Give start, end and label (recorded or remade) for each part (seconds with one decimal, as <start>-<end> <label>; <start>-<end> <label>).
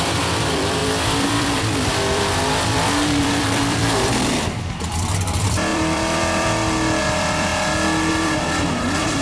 0.0-7.5 remade; 7.5-8.1 recorded; 8.1-9.2 remade